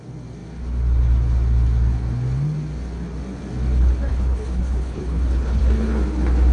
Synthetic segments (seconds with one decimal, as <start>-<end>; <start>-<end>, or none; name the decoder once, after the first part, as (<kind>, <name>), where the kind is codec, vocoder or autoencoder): 4.1-5.6 (codec, HILCodec)